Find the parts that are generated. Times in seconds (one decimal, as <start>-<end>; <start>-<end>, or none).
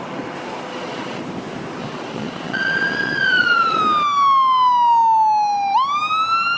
0.7-1.2; 1.8-3.8